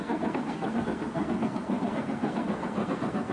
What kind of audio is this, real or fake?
fake